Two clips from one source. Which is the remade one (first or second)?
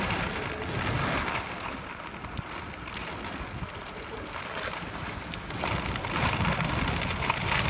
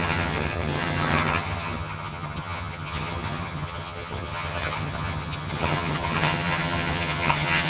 second